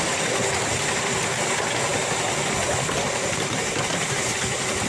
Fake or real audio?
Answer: real